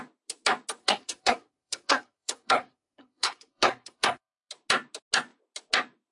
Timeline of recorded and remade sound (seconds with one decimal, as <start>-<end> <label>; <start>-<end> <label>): 0.0-0.8 recorded; 0.8-4.5 remade; 4.5-6.1 recorded